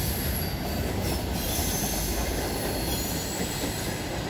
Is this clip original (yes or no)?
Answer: yes